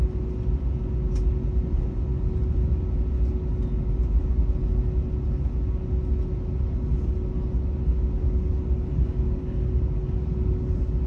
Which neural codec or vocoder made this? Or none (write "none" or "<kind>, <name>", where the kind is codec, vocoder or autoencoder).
none